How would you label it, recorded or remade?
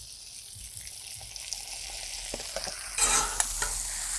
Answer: recorded